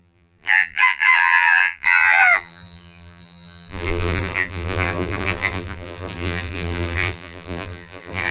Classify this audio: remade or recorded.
remade